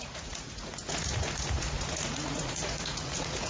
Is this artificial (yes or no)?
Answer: yes